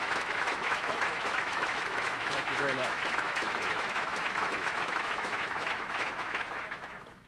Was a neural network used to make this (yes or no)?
yes